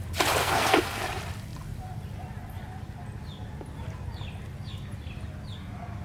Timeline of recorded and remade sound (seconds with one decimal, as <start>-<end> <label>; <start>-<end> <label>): 0.0-0.4 recorded; 0.4-1.0 remade; 1.0-6.0 recorded